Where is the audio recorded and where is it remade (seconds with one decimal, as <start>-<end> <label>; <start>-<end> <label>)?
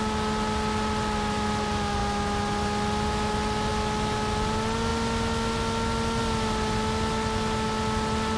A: 0.0-8.4 recorded